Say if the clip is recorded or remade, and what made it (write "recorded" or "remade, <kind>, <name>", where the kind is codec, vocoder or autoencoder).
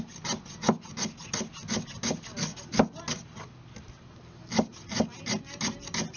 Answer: recorded